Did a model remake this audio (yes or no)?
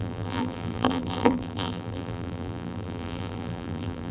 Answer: yes